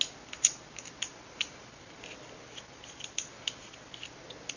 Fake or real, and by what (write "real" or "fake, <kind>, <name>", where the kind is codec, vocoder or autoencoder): real